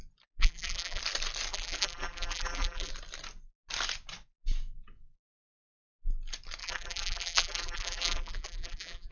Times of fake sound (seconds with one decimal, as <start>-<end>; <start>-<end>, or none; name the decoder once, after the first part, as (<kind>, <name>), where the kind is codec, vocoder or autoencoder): 0.4-1.0 (vocoder, BigVGAN v2); 1.5-2.9; 6.6-9.1